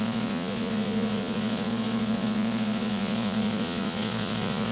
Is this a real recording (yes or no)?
no